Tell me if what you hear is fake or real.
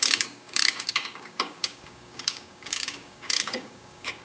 fake